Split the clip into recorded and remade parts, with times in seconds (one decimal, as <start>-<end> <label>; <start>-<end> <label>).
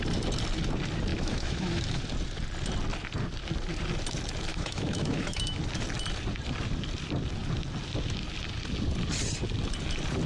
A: 0.0-1.1 recorded; 1.1-2.0 remade; 2.0-4.5 recorded; 4.5-5.6 remade; 5.6-10.3 recorded